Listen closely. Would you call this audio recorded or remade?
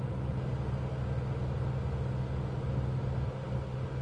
recorded